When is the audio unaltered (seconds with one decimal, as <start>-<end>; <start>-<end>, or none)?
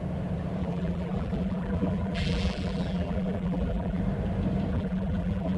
0.0-0.6; 4.0-4.7